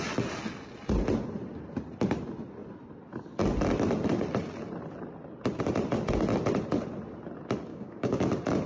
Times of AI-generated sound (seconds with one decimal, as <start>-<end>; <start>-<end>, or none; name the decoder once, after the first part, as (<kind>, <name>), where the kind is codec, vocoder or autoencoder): 7.7-8.2 (codec, DAC)

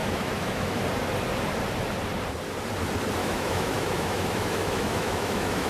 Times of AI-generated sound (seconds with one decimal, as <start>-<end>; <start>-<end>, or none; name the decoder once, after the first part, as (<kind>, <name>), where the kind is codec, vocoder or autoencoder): 0.0-0.8 (autoencoder, DAC-VAE); 3.2-5.7